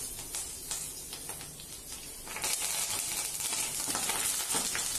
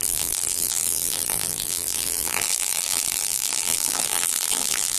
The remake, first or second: second